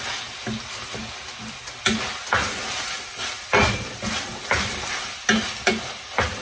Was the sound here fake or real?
real